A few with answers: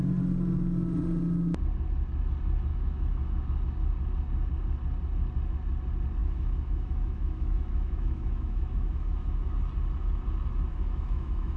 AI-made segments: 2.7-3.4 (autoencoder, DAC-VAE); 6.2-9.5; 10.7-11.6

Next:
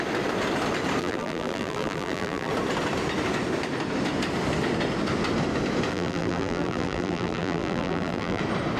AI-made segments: 1.0-2.5 (vocoder, BigVGAN v2); 5.9-8.4

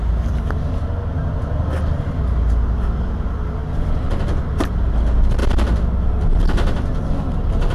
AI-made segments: none

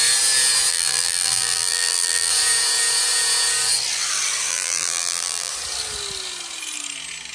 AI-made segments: 0.7-2.3 (vocoder, BigVGAN v2); 4.5-5.5

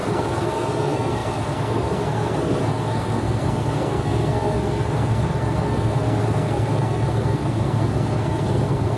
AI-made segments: 0.0-9.0 (codec, SNAC)

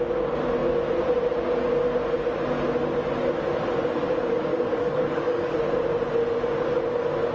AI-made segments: 4.5-5.6 (codec, DAC)

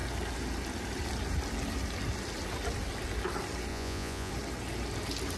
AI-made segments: 3.7-4.3 (vocoder, Vocos)

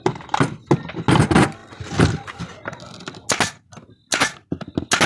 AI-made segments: none